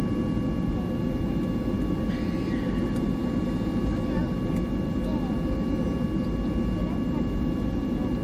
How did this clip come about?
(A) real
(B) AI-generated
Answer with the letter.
A